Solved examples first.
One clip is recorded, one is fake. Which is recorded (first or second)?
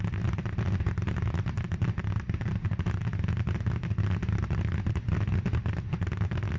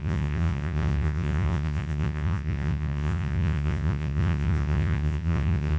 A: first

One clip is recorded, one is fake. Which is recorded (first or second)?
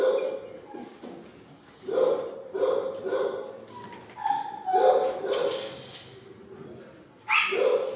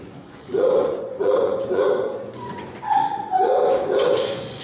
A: first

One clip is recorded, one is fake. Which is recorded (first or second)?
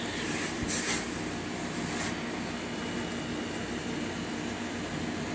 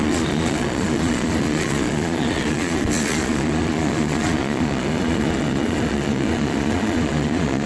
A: first